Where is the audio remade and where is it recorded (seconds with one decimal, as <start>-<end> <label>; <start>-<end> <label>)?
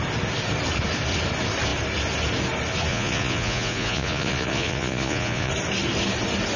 0.0-2.9 recorded; 2.9-5.5 remade; 5.5-6.6 recorded